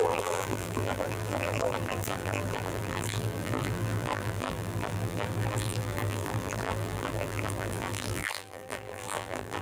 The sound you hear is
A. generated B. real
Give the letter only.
A